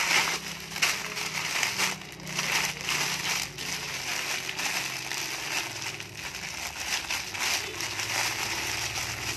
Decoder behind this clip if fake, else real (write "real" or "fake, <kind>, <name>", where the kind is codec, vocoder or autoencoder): real